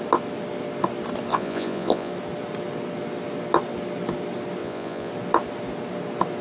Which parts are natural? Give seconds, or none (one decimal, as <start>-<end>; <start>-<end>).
0.0-1.3; 2.1-4.6; 5.1-6.4